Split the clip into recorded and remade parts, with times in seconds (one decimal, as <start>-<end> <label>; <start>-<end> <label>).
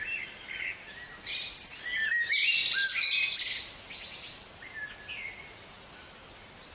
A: 0.0-6.7 recorded